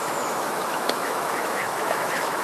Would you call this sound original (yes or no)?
no